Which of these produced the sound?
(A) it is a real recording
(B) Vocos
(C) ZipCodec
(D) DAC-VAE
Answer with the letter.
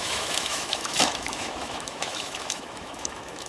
D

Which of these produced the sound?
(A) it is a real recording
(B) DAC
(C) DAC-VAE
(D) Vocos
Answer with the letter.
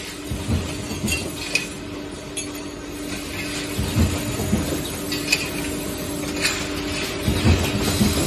A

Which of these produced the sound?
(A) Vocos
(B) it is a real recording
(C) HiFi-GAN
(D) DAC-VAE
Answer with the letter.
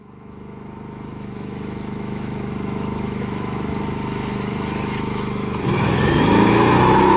D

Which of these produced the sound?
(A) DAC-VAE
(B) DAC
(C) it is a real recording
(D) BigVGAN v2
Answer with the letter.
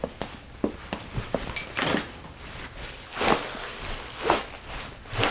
C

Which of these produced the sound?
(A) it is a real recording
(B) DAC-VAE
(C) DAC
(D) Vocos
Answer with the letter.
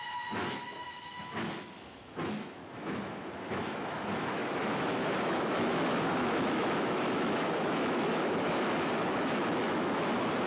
B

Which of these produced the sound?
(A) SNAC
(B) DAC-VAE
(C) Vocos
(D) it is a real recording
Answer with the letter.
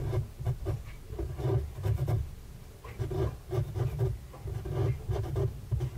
D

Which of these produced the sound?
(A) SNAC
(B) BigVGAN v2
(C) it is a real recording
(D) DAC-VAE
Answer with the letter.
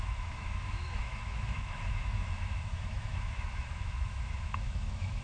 D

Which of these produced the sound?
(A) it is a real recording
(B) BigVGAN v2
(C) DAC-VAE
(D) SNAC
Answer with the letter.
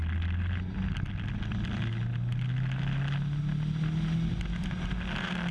A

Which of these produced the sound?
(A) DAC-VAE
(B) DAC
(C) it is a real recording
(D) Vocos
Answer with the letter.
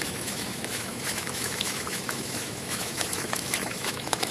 A